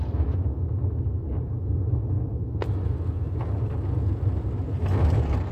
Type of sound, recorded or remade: recorded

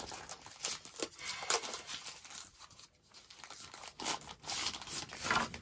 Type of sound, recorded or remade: recorded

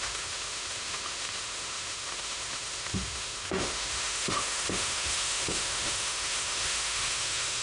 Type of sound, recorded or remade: remade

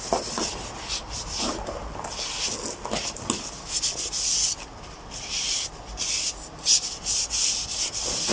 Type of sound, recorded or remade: recorded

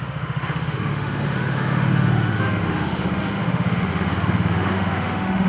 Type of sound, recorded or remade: remade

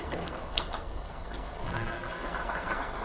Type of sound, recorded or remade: remade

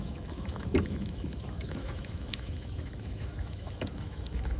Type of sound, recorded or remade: remade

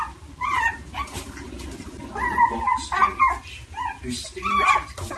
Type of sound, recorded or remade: recorded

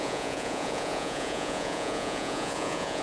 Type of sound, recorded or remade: remade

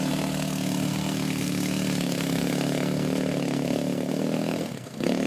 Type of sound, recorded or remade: remade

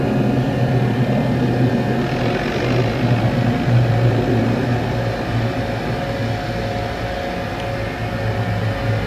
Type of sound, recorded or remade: recorded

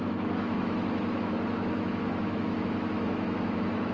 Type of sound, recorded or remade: remade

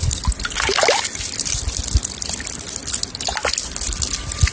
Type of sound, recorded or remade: recorded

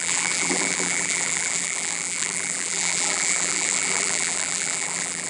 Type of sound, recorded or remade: remade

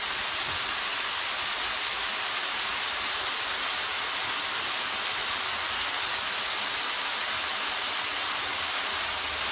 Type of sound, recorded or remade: recorded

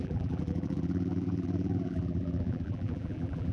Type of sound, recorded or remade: remade